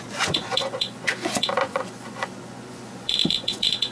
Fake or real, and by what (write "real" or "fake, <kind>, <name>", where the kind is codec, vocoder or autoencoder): fake, vocoder, Vocos